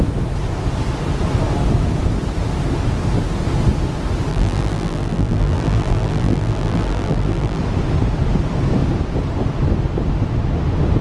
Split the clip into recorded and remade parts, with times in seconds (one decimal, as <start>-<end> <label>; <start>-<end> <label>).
0.0-4.3 recorded; 4.3-7.6 remade; 7.6-11.0 recorded